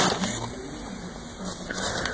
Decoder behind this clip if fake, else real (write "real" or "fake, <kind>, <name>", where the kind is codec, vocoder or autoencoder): real